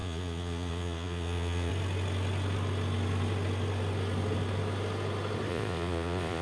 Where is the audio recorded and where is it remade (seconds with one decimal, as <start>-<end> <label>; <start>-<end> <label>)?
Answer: 0.0-1.7 remade; 1.7-5.5 recorded; 5.5-6.4 remade